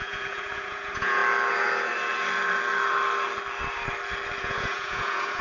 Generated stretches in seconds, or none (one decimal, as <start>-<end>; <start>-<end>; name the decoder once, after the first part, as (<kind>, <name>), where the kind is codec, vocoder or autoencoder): 0.0-1.2 (vocoder, Vocos); 4.4-5.4